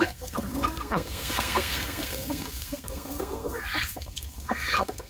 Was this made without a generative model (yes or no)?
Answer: no